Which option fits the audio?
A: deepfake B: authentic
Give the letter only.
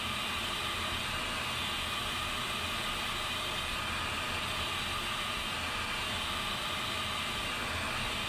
B